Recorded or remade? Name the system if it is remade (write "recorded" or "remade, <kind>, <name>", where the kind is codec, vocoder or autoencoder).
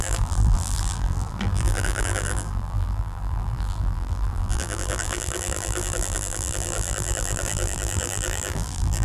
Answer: remade, vocoder, BigVGAN v2